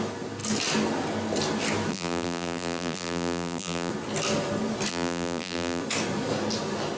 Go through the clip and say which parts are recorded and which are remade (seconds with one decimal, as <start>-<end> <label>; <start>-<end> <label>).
0.0-1.9 recorded; 1.9-3.9 remade; 3.9-4.9 recorded; 4.9-5.8 remade; 5.8-7.0 recorded